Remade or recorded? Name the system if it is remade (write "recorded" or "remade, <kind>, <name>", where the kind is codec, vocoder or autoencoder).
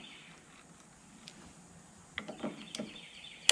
recorded